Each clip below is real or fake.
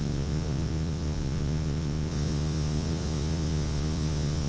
fake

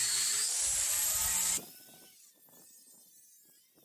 real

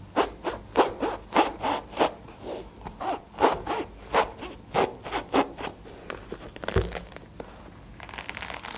real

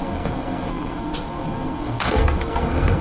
fake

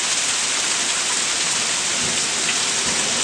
real